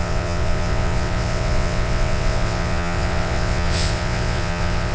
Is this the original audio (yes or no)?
no